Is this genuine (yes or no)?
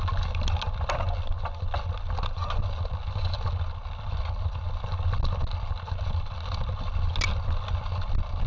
yes